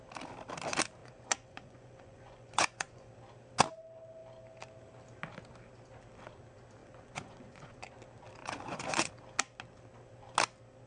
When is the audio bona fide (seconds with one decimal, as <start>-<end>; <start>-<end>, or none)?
0.0-1.0; 3.1-6.8; 7.9-8.4; 9.1-10.9